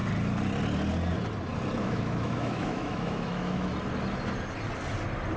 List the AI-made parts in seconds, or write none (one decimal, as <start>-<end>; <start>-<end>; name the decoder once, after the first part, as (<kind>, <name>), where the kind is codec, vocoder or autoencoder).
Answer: 1.8-3.7 (autoencoder, DAC-VAE)